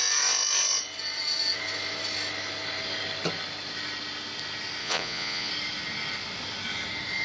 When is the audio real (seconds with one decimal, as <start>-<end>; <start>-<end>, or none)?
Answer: 0.0-4.8; 5.5-7.2